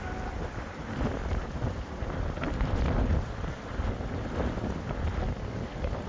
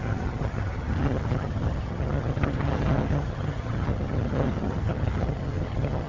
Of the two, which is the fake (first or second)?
second